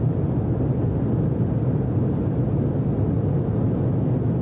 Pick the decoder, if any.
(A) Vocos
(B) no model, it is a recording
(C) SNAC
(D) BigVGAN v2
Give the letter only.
B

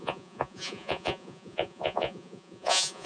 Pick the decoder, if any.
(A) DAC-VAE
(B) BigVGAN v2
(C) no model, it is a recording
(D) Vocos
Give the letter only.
D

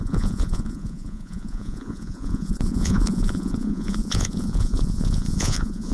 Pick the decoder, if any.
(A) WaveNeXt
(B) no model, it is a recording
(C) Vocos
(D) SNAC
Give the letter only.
C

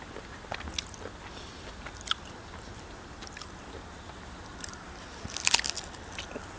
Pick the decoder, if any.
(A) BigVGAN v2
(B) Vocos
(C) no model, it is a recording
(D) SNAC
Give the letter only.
C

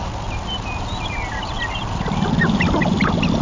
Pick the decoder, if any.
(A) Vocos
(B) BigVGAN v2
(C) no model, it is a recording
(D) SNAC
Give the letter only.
C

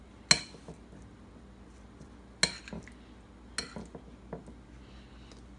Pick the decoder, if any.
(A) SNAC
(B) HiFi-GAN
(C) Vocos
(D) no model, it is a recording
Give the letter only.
D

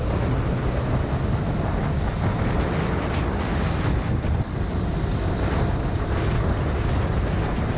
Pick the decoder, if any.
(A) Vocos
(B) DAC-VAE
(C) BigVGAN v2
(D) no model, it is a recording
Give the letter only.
D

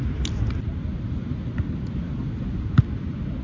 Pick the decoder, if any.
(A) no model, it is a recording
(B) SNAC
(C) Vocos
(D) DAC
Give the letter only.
A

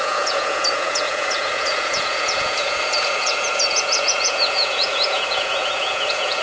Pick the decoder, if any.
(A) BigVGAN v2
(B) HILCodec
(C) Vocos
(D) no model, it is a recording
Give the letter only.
C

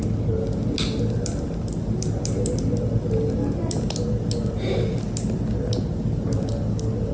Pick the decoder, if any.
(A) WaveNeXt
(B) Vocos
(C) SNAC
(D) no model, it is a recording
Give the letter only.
D